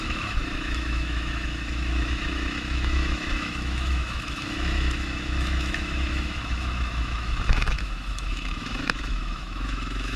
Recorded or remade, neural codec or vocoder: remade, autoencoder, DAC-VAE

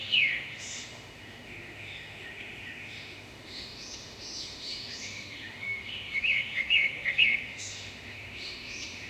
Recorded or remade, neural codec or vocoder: remade, autoencoder, DAC-VAE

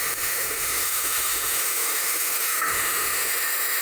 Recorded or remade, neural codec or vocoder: remade, autoencoder, DAC-VAE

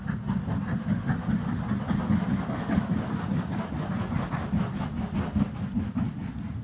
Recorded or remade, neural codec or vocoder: recorded